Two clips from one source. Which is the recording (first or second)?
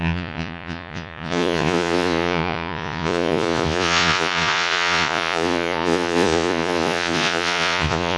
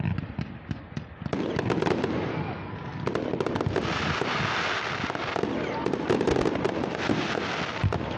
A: second